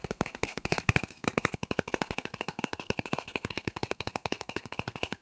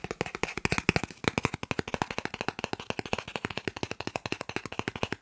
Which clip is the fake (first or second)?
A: first